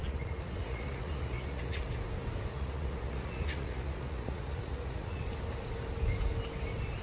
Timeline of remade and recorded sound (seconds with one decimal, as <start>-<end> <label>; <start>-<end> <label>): 0.0-1.8 remade; 1.8-2.5 recorded; 2.5-5.2 remade; 5.2-7.0 recorded